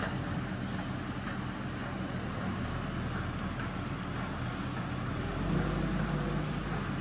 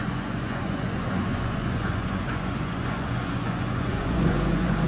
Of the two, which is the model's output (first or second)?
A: second